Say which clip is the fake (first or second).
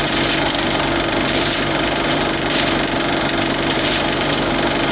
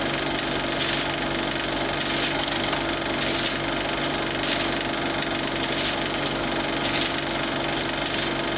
first